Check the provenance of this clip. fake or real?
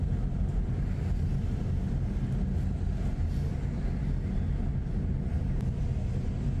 real